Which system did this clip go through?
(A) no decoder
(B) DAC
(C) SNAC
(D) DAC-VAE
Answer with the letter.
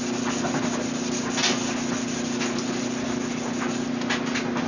A